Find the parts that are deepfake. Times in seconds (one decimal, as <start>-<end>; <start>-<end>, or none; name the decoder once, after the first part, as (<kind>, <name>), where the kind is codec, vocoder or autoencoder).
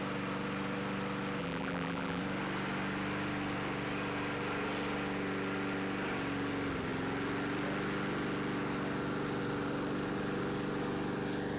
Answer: 1.4-2.2 (vocoder, BigVGAN v2)